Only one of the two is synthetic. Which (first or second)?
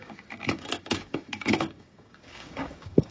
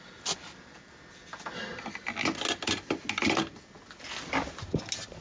first